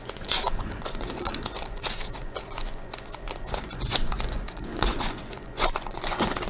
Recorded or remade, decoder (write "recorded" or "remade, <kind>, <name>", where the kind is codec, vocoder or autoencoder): remade, vocoder, Vocos